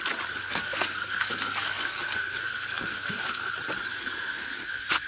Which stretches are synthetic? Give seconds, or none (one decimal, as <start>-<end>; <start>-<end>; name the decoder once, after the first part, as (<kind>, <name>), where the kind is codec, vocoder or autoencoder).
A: 0.4-3.5 (codec, SNAC); 3.9-5.1